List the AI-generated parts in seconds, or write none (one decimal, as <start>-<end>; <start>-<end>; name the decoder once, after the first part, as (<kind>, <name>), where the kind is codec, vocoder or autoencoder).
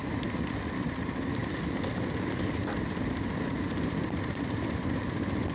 none